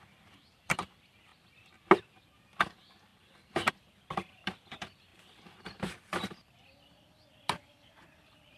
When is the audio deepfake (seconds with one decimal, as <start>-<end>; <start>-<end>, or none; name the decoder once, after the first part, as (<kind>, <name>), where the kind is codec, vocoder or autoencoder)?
0.0-1.3 (vocoder, BigVGAN v2); 2.2-3.1; 3.7-8.6